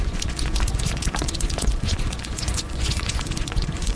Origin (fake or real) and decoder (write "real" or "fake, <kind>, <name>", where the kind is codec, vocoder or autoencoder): fake, vocoder, Vocos